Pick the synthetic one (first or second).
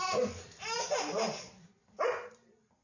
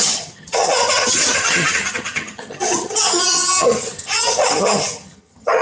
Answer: second